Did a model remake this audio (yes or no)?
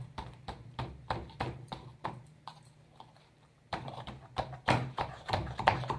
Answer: yes